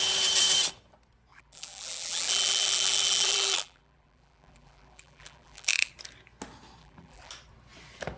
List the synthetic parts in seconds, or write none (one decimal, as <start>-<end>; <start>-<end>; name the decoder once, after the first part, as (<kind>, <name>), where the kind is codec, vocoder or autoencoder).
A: 1.3-5.9 (vocoder, BigVGAN v2); 6.8-7.3